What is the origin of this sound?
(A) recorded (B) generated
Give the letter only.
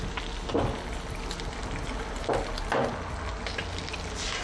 A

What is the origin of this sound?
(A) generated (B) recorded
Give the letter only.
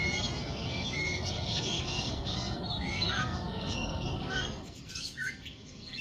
A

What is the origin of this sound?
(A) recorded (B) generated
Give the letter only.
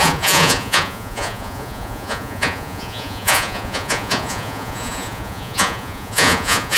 B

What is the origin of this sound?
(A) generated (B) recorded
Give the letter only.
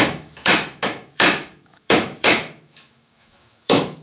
A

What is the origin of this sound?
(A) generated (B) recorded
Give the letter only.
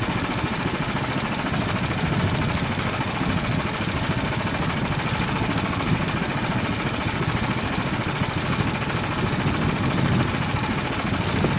B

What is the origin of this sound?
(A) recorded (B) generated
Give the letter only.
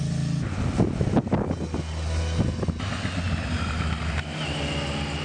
A